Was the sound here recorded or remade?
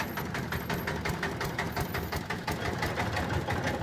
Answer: recorded